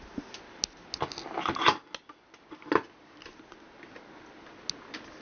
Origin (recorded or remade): recorded